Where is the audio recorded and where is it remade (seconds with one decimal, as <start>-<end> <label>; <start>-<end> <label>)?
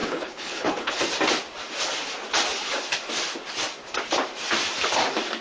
0.0-1.0 remade; 1.0-5.4 recorded